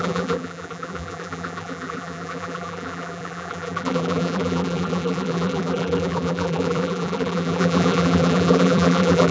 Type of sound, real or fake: fake